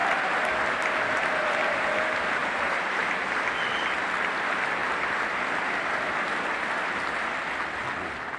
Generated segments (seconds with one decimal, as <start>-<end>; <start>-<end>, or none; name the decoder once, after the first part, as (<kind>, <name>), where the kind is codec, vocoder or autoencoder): 2.4-3.2 (vocoder, BigVGAN v2)